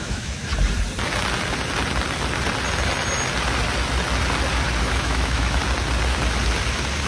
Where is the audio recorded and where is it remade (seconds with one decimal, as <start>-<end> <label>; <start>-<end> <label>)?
0.0-0.5 remade; 0.5-4.8 recorded; 4.8-5.6 remade; 5.6-7.1 recorded